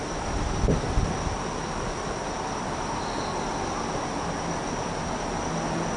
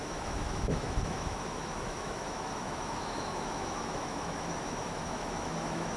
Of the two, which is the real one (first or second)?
first